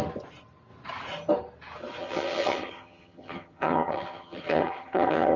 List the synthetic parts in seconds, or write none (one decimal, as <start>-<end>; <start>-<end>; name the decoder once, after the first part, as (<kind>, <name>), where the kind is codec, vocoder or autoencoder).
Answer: 2.0-5.4 (vocoder, HiFi-GAN)